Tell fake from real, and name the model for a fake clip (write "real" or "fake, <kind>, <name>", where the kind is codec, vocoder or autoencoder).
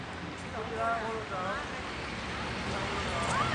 real